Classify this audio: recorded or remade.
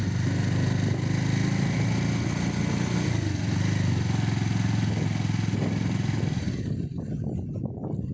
recorded